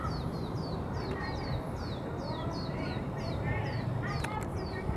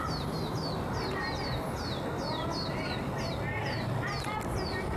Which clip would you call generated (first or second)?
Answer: first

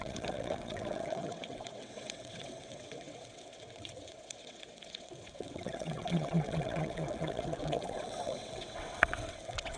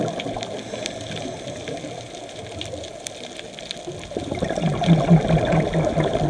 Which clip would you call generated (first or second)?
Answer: first